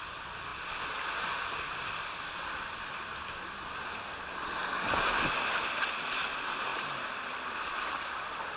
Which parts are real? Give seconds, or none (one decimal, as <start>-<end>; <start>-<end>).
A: 0.0-8.6